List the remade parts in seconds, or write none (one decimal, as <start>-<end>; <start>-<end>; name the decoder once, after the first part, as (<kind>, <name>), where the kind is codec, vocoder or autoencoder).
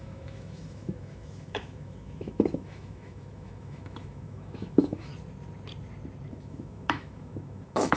0.0-5.1 (autoencoder, DAC-VAE); 6.3-8.0